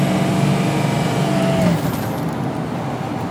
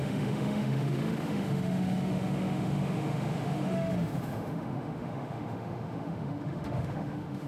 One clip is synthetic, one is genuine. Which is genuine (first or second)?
first